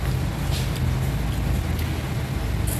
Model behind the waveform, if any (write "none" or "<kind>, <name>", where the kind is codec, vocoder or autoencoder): none